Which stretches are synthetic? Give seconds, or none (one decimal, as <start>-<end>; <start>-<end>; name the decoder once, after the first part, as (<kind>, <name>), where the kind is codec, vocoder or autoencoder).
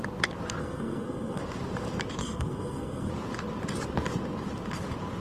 0.6-1.4 (codec, SNAC); 2.2-3.1